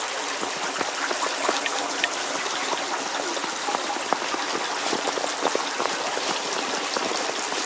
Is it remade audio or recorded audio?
recorded